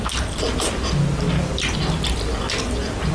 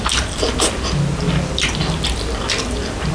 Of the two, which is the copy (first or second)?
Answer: second